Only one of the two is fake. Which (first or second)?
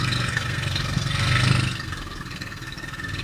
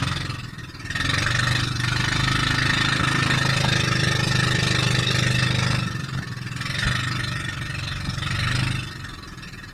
first